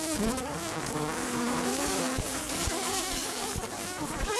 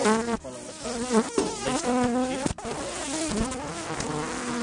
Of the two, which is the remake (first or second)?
first